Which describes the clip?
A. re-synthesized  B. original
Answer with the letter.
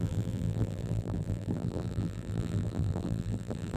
A